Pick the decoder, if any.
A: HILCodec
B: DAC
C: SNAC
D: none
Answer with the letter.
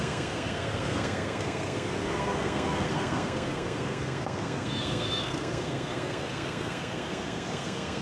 C